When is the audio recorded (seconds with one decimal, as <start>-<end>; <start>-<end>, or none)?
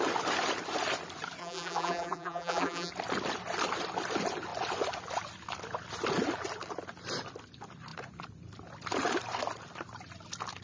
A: 0.0-1.4; 2.9-10.6